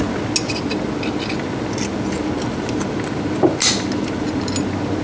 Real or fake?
real